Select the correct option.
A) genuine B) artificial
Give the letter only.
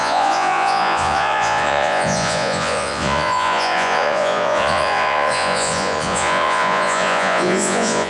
B